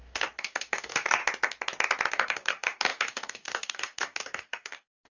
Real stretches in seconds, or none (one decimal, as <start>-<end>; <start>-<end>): 1.2-2.1